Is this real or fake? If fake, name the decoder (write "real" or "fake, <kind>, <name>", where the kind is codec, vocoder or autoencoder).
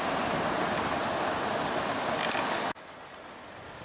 real